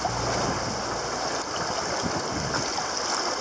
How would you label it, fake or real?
real